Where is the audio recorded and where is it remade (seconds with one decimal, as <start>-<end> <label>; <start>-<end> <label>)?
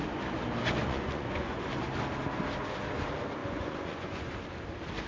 0.0-0.8 recorded; 0.8-1.8 remade; 1.8-3.4 recorded; 3.4-4.3 remade; 4.3-5.1 recorded